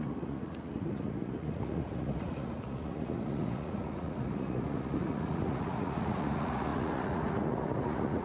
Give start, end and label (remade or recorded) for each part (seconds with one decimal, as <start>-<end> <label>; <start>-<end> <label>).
0.0-8.2 remade